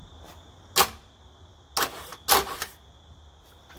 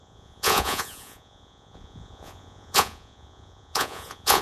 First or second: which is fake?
second